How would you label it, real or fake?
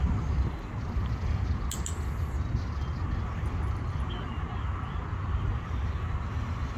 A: real